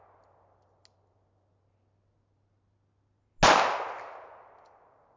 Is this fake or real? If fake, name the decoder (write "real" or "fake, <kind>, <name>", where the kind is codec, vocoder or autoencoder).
real